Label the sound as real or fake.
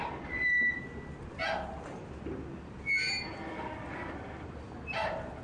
real